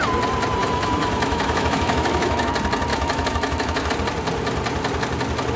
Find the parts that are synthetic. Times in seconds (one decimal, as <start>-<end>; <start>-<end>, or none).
0.6-2.5; 2.9-3.9